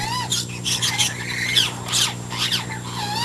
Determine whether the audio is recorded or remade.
remade